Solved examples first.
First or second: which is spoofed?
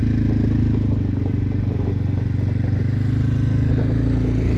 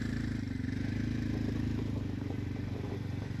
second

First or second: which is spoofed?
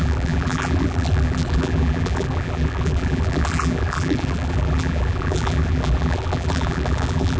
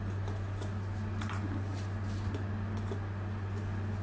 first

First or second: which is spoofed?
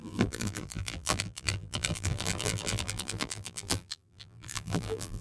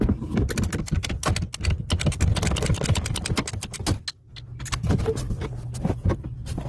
first